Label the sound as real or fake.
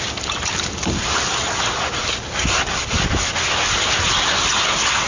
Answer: real